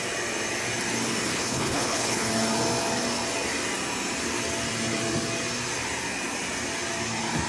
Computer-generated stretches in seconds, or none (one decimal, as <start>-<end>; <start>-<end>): 1.3-2.3